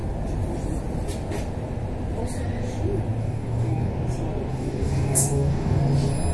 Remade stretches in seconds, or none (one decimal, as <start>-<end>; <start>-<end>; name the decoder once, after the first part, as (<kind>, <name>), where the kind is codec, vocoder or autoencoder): 3.2-3.9 (codec, DAC); 4.5-5.8

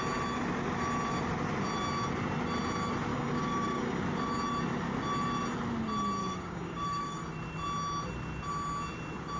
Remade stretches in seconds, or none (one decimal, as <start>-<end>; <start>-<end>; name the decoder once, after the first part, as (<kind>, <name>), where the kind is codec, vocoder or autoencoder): 3.1-4.0 (codec, DAC); 6.2-7.2

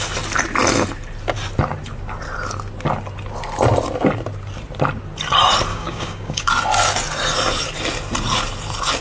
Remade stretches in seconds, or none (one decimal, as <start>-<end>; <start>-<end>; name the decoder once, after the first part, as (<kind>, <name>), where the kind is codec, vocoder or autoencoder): 5.7-6.5 (codec, DAC)

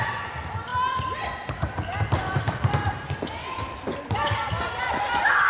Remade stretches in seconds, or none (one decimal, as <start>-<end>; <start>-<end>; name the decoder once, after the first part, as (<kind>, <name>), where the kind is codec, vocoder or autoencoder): none

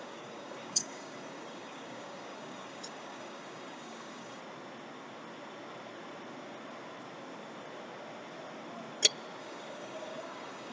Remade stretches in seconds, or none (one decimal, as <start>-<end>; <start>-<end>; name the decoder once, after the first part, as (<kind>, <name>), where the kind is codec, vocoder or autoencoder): 0.0-4.4 (codec, DAC); 9.4-10.7

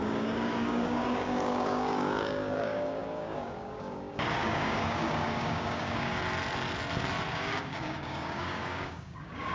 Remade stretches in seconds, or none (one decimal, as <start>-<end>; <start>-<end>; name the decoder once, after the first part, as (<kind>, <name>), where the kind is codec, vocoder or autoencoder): 0.0-6.2 (codec, DAC); 7.3-9.5

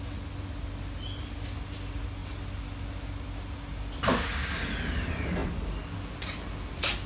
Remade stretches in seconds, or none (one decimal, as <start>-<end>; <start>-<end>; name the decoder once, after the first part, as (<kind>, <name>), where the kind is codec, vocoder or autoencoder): 4.1-4.7 (codec, DAC)